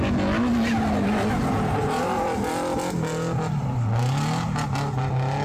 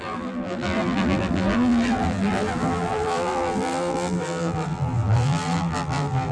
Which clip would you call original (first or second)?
first